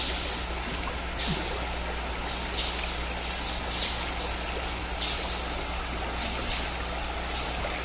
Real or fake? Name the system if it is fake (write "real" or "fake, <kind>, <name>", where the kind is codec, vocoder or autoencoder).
real